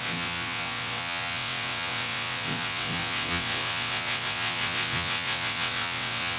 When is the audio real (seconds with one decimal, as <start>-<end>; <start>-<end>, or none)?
none